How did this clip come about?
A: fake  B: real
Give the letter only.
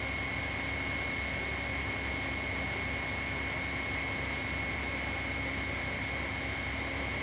B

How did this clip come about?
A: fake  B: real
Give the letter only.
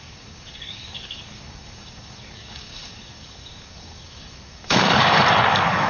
A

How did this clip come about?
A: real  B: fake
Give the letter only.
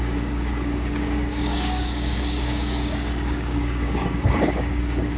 B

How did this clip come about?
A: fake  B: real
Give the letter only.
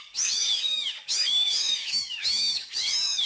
A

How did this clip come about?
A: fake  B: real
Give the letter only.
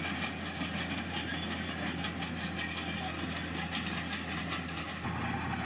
B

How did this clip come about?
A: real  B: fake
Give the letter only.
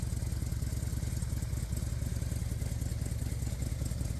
A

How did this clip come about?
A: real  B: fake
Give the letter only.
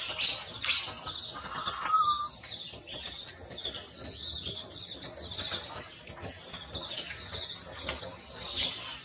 A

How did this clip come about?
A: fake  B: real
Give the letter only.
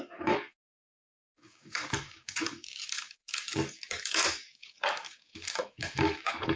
A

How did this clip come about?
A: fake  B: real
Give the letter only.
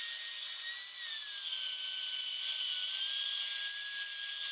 B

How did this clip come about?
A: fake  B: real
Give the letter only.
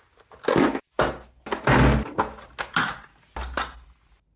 B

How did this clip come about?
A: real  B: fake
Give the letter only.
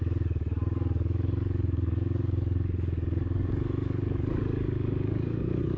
B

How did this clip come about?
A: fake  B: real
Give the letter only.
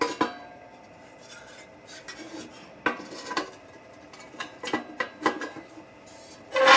B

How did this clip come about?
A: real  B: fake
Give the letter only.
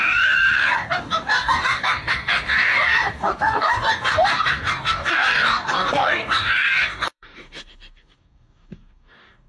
B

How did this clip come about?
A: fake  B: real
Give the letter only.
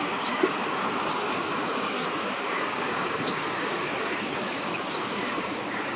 A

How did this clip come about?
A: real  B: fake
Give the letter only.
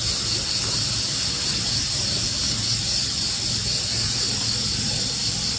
A